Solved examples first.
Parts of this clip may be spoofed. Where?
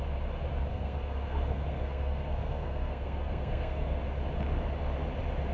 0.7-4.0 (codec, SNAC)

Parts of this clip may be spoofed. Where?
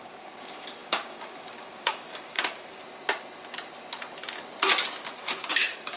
0.0-2.8 (codec, DAC); 5.1-6.0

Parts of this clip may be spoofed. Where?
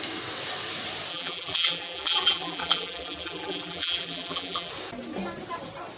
1.1-4.7 (vocoder, BigVGAN v2)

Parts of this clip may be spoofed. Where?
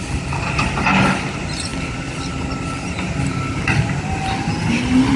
none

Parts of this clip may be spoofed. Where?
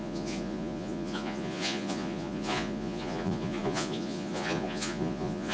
0.0-5.5 (vocoder, Vocos)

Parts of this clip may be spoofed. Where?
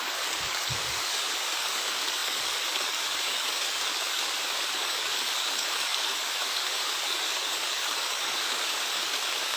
0.0-9.6 (codec, DAC)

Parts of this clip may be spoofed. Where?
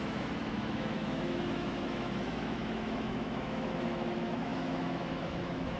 0.0-5.8 (autoencoder, DAC-VAE)